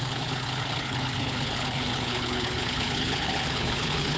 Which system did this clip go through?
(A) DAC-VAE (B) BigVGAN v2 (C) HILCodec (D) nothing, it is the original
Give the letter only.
C